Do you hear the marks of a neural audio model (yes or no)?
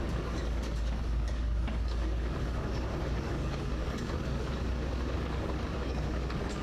yes